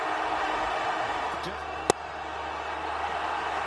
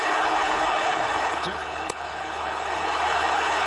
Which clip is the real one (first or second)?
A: first